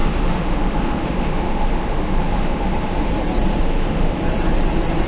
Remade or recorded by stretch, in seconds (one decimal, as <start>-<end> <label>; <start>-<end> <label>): 0.0-3.1 remade; 3.1-3.5 recorded; 3.5-4.2 remade; 4.2-5.1 recorded